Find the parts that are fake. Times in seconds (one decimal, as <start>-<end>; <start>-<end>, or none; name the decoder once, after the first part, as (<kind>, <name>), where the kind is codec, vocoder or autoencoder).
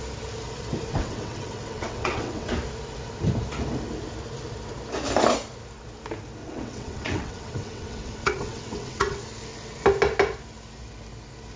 0.9-2.5 (vocoder, WaveNeXt); 6.4-9.2